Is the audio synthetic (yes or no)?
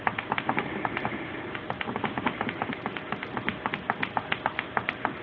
no